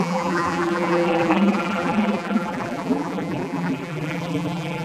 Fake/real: fake